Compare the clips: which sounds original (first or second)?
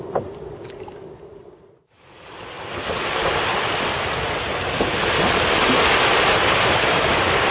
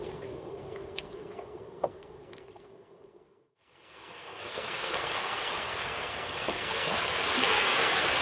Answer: first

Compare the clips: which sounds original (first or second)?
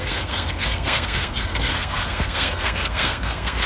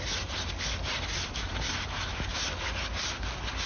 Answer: second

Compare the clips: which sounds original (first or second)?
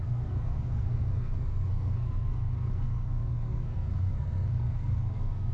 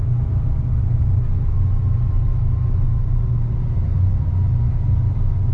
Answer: second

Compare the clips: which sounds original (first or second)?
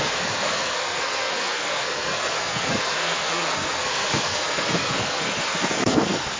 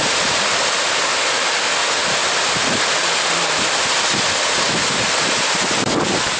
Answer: second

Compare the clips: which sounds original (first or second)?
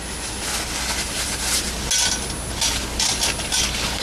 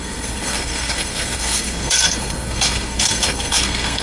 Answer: first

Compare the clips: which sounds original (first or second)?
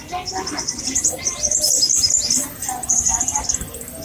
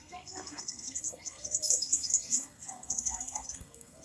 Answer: first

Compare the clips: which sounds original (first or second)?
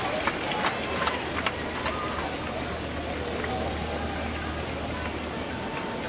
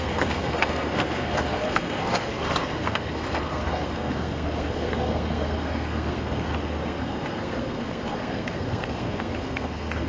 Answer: first